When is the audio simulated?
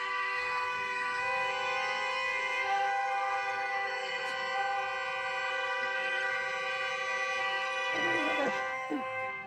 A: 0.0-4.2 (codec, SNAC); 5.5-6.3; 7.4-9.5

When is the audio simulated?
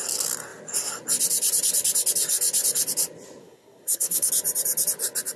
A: 3.4-4.3 (codec, SNAC)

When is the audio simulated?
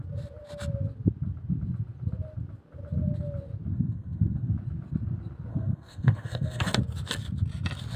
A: 3.7-4.5 (codec, SNAC); 5.5-6.8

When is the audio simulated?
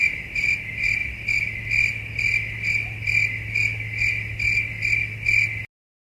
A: none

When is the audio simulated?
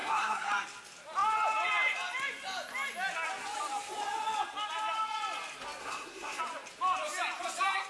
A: 0.0-0.5 (codec, SNAC); 5.8-6.4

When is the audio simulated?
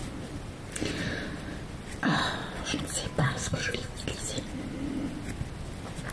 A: 3.2-3.9 (codec, SNAC)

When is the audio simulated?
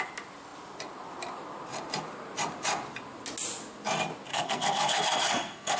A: 4.3-5.8 (codec, SNAC)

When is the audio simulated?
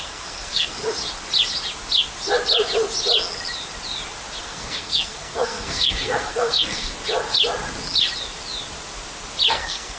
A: 0.0-0.8 (codec, SNAC); 4.4-6.9; 9.5-10.0